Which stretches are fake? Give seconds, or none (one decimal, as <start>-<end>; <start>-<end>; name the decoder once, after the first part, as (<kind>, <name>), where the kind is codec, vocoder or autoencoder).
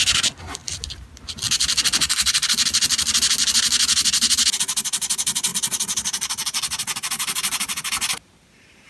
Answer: none